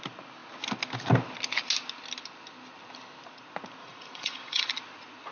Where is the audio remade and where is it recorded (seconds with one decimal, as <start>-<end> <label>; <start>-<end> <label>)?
0.0-3.8 recorded; 3.8-4.7 remade; 4.7-5.3 recorded